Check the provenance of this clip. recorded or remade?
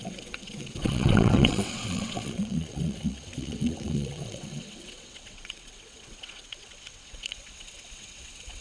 remade